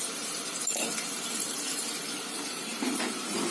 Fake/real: fake